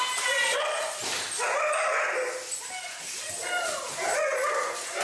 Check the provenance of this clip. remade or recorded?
recorded